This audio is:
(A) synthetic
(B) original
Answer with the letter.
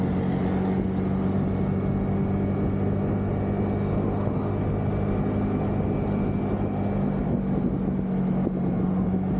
B